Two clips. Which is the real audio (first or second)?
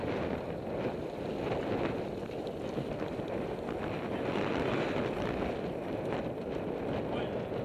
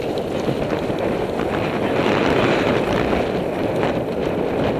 first